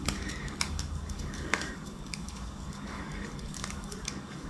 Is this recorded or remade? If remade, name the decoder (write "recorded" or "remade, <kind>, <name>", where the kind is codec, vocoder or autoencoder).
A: remade, codec, DAC